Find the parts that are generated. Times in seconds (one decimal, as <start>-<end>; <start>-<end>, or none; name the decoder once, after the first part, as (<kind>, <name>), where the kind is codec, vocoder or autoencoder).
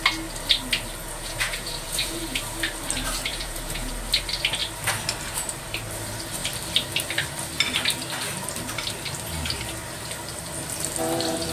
1.0-2.4 (vocoder, Vocos); 3.3-3.9